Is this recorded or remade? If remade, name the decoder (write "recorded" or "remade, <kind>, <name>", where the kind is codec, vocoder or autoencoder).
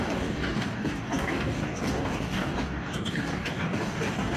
remade, codec, DAC